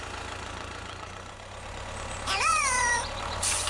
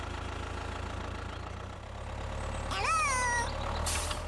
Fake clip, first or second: first